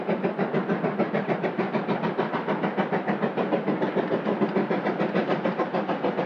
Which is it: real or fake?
real